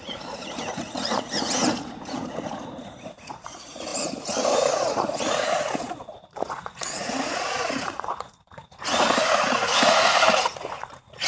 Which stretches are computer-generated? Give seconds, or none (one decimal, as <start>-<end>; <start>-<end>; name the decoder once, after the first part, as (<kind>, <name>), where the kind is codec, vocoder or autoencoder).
0.0-11.3 (vocoder, Vocos)